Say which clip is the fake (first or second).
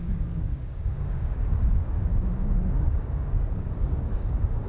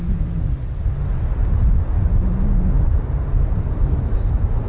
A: first